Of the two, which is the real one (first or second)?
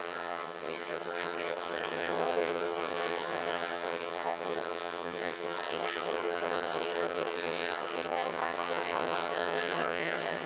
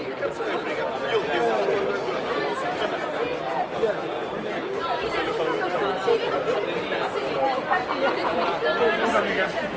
second